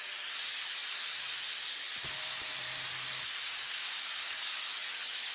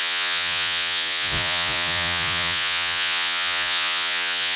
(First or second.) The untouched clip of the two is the first